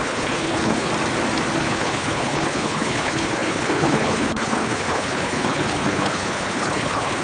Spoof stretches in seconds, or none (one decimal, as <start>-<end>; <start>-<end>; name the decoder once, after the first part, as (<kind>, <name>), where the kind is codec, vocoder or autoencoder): 0.0-0.9 (codec, HILCodec); 1.6-7.2